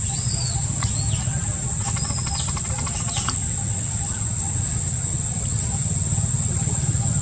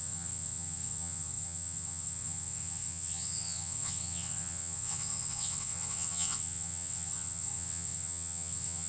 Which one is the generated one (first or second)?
second